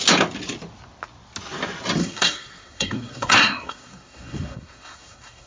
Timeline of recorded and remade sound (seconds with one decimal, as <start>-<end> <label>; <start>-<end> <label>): 0.0-2.0 recorded; 2.0-5.5 remade